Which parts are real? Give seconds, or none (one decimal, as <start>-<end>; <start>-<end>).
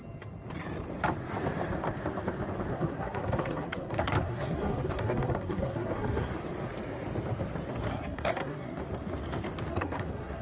0.0-2.7; 6.3-7.9; 8.8-9.7